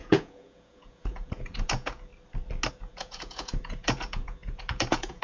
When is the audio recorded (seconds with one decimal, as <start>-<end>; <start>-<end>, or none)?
2.1-2.7